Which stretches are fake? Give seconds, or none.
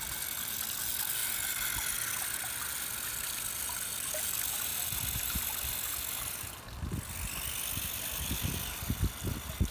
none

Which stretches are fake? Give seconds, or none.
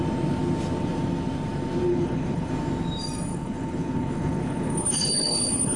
1.9-2.5 (codec, HILCodec); 3.3-5.8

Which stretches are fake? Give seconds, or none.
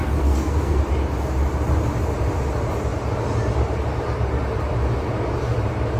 0.0-0.8 (codec, SNAC)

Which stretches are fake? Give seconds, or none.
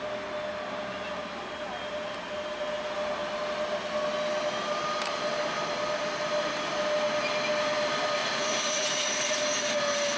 8.2-9.4 (vocoder, Vocos)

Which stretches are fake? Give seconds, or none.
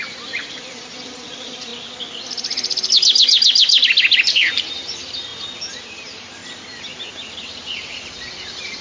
0.0-1.7 (vocoder, BigVGAN v2); 4.3-5.3; 5.8-6.4